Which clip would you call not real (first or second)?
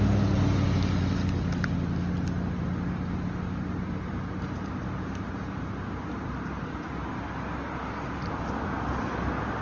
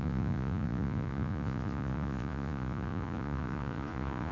second